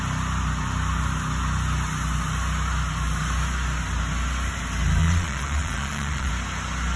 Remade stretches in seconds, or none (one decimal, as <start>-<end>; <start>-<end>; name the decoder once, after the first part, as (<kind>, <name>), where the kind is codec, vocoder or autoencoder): 5.0-6.3 (vocoder, Vocos)